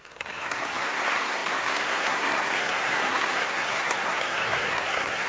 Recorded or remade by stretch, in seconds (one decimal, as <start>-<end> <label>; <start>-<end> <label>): 0.0-5.3 remade